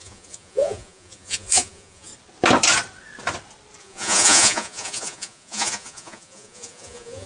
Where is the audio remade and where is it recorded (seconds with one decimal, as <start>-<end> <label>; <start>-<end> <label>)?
0.0-2.1 remade; 2.1-3.8 recorded; 3.8-7.3 remade